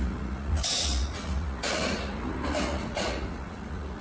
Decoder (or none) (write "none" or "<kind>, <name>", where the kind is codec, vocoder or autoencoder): vocoder, Vocos